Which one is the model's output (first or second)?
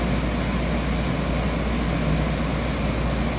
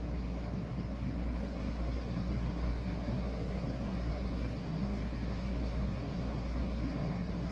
second